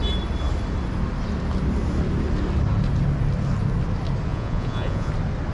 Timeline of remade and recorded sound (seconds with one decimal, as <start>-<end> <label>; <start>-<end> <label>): 0.0-4.3 recorded; 4.3-5.1 remade; 5.1-5.5 recorded